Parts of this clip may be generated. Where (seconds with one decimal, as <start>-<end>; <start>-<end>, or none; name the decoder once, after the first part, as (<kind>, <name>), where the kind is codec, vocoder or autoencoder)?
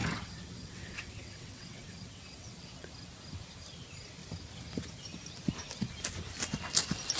0.0-2.9 (vocoder, WaveNeXt)